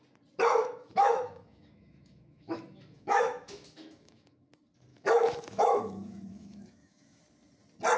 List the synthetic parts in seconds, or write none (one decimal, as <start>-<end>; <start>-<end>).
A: 0.5-4.5; 4.9-7.2